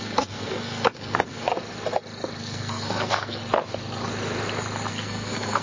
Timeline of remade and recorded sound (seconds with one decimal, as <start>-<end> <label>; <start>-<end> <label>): 0.0-1.5 remade; 1.5-2.4 recorded; 2.4-3.4 remade; 3.4-4.9 recorded; 4.9-5.6 remade